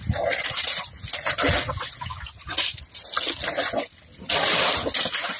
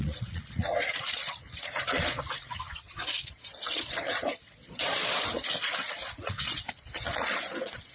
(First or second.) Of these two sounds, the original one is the first